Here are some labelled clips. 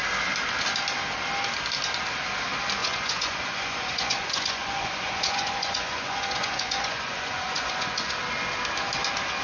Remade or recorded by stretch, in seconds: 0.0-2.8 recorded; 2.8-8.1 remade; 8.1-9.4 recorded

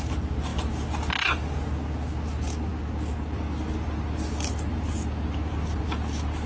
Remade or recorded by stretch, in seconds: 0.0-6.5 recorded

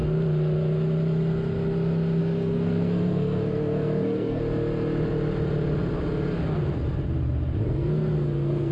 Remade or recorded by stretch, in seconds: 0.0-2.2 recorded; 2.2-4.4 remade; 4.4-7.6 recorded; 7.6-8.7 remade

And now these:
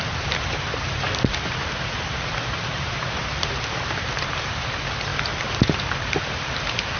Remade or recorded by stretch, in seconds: 0.0-4.1 remade; 4.1-7.0 recorded

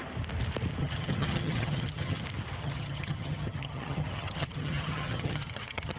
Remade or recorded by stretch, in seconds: 0.0-0.8 recorded; 0.8-2.2 remade; 2.2-2.6 recorded; 2.6-6.0 remade

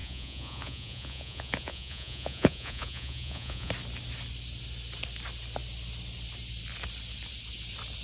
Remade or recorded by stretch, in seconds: 0.0-3.7 remade; 3.7-8.0 recorded